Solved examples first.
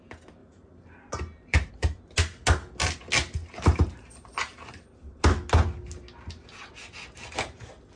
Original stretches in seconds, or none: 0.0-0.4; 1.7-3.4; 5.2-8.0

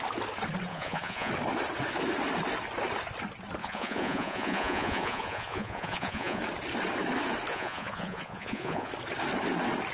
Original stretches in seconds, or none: 0.0-0.7; 1.3-3.6; 6.4-7.5; 8.9-9.9

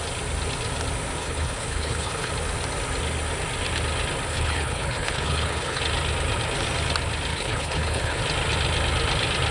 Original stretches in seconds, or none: 0.0-1.2; 2.3-4.3; 5.8-7.3; 8.2-9.5